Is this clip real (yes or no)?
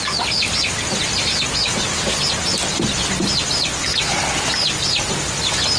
yes